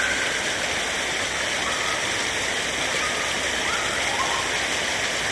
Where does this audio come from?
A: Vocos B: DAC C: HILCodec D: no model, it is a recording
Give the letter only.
D